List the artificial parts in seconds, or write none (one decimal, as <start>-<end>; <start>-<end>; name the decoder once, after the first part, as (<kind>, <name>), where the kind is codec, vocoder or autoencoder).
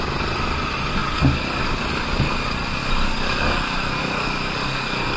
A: 2.8-5.2 (codec, DAC)